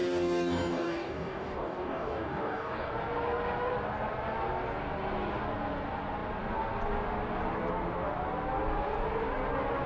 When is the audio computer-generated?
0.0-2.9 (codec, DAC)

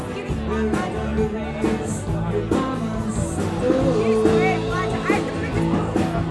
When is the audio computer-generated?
none

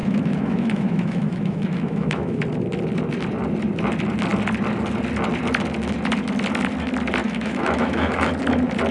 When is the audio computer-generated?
0.0-2.4 (autoencoder, DAC-VAE); 7.2-8.3

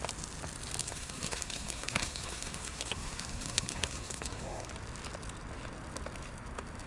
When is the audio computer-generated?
0.8-4.7 (codec, SNAC)

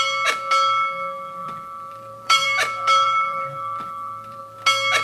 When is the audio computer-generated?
1.4-4.4 (vocoder, BigVGAN v2)

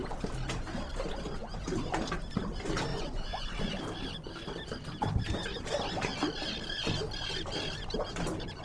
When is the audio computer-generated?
2.9-3.6 (vocoder, Vocos)

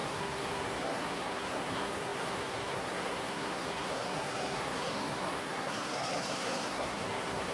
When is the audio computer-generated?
0.0-7.5 (codec, SNAC)